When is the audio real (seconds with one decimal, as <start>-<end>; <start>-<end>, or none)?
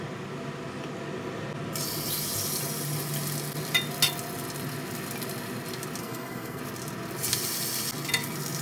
0.0-6.0; 6.6-8.6